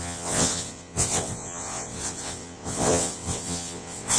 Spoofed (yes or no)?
yes